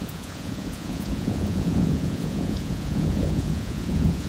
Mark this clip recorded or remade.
remade